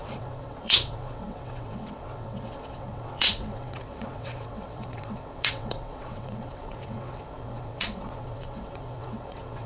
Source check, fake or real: fake